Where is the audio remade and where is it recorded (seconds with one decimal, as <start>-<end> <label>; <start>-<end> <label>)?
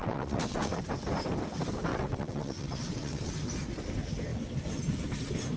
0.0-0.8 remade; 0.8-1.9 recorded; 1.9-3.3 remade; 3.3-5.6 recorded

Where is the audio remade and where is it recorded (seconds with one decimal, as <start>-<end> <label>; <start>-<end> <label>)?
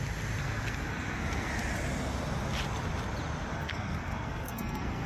0.0-0.4 recorded; 0.4-1.5 remade; 1.5-3.5 recorded; 3.5-5.1 remade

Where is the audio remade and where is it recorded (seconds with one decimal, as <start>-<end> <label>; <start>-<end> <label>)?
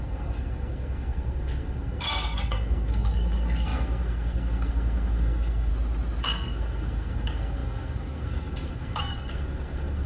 0.0-5.7 remade; 5.7-6.2 recorded; 6.2-10.1 remade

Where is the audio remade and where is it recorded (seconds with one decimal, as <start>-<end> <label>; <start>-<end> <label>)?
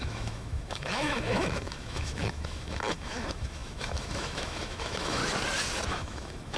0.0-5.2 remade; 5.2-5.9 recorded; 5.9-6.6 remade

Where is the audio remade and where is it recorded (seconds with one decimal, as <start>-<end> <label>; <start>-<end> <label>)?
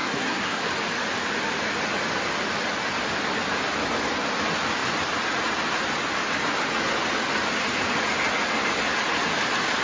0.0-0.6 remade; 0.6-9.8 recorded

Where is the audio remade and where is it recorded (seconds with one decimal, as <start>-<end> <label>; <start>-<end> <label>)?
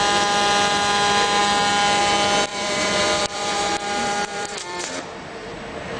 0.0-2.5 recorded; 2.5-5.5 remade; 5.5-6.0 recorded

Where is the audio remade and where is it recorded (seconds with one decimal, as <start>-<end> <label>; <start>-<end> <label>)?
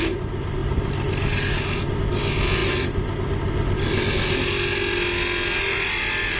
0.0-6.4 recorded